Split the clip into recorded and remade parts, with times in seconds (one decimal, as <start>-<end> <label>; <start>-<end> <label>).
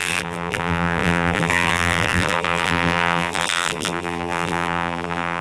0.0-5.4 remade